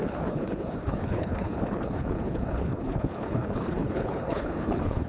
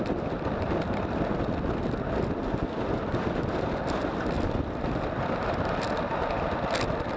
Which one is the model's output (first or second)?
first